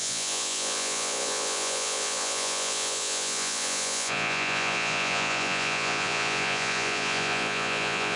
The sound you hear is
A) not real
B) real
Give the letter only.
A